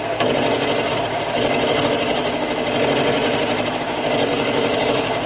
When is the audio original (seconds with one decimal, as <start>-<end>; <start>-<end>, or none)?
0.0-0.9; 1.8-3.2; 3.8-4.3